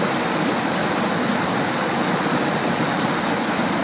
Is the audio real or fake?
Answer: real